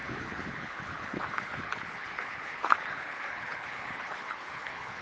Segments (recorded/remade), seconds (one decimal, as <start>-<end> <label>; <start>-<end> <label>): 0.0-5.0 remade